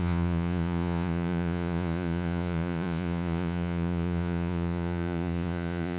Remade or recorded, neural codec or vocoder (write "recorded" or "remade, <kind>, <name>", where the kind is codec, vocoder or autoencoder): remade, vocoder, Vocos